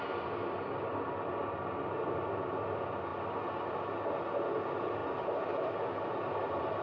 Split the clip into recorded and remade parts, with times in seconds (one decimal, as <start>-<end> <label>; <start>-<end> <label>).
0.0-6.8 recorded

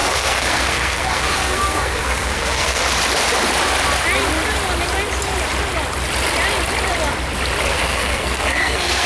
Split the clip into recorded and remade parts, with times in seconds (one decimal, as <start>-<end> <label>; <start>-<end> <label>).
0.0-2.8 remade; 2.8-7.7 recorded; 7.7-9.1 remade

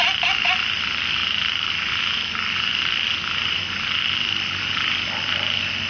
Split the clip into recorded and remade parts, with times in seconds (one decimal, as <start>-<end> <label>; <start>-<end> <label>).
0.0-5.9 recorded

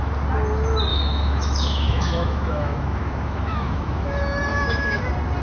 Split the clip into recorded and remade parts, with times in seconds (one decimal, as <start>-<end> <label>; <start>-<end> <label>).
0.0-0.9 recorded; 0.9-4.1 remade; 4.1-4.5 recorded; 4.5-5.0 remade; 5.0-5.4 recorded

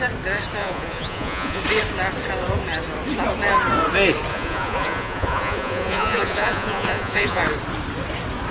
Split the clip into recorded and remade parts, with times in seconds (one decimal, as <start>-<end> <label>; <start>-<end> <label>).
0.0-0.6 recorded; 0.6-1.6 remade; 1.6-4.3 recorded; 4.3-7.4 remade; 7.4-8.5 recorded

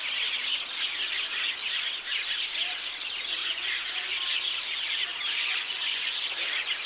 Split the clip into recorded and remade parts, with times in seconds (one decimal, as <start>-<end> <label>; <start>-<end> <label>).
0.0-3.4 recorded; 3.4-4.1 remade; 4.1-5.5 recorded; 5.5-6.2 remade; 6.2-6.9 recorded

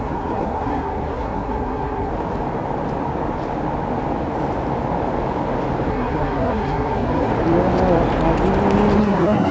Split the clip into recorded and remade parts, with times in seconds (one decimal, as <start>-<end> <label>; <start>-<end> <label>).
0.0-2.1 remade; 2.1-5.9 recorded; 5.9-7.3 remade; 7.3-9.0 recorded; 9.0-9.5 remade

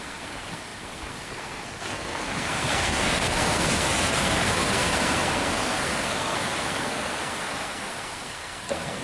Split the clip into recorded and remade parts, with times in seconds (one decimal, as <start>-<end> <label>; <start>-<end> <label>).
0.0-9.0 remade